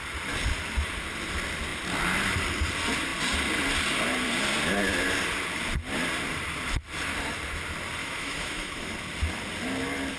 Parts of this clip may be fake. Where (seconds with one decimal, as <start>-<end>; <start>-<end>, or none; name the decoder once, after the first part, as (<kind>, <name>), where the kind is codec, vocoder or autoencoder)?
8.0-8.9 (autoencoder, DAC-VAE)